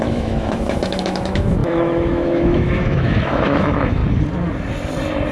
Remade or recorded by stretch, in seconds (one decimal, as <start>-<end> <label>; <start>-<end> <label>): 0.0-4.0 remade; 4.0-5.3 recorded